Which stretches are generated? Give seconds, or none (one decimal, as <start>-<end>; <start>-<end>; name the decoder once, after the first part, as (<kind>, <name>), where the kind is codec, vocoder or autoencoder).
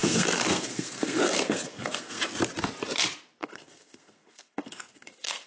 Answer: 0.0-2.2 (codec, SNAC); 3.4-5.5